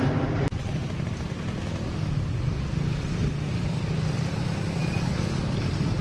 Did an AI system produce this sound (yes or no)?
no